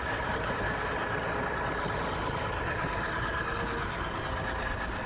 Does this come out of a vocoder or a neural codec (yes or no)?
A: no